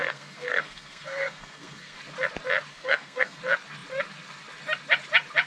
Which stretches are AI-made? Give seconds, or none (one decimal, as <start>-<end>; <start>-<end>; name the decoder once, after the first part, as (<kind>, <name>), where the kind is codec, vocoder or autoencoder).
0.0-2.0 (codec, SNAC); 2.7-3.4